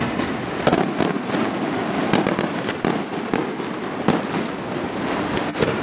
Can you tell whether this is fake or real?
real